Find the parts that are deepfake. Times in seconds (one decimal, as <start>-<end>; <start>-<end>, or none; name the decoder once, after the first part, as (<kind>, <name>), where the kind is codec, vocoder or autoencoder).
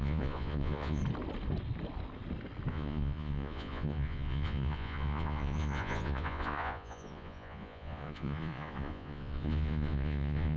0.0-1.0 (vocoder, Vocos); 2.7-10.6